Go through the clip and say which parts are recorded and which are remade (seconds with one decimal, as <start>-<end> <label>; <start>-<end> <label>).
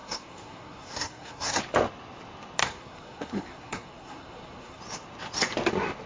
0.0-1.6 remade; 1.6-2.6 recorded; 2.6-4.8 remade; 4.8-6.1 recorded